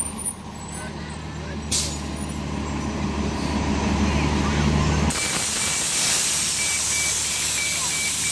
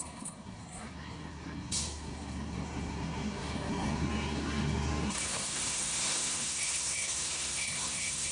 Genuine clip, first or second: first